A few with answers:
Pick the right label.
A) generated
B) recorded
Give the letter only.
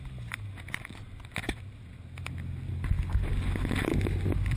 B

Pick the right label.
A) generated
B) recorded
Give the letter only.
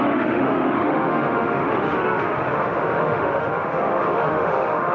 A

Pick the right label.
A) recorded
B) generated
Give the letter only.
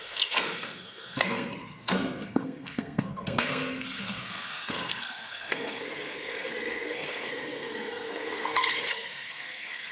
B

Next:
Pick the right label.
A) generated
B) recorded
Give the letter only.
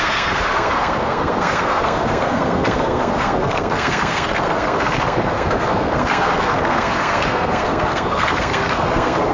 A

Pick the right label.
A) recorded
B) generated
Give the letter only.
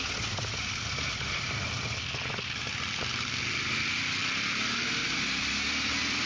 A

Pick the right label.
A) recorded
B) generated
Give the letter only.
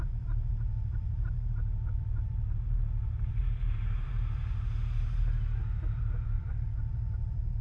B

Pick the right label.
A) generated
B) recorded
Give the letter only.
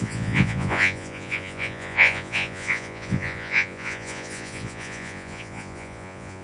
A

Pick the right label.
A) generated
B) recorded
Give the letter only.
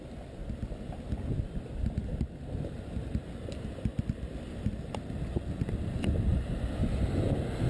B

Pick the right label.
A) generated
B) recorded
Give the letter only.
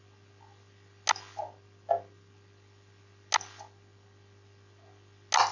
B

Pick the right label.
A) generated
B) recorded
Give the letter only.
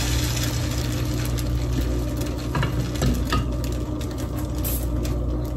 B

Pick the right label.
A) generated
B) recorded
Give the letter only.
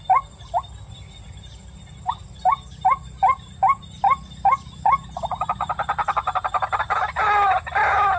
B